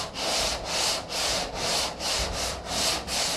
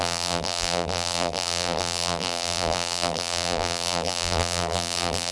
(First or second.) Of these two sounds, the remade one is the second